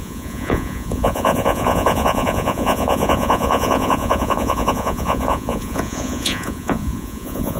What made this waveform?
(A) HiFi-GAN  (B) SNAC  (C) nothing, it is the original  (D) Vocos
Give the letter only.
D